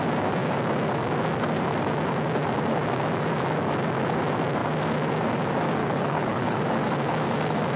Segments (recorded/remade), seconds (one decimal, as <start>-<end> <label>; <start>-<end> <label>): 0.0-5.8 recorded; 5.8-6.6 remade; 6.6-7.8 recorded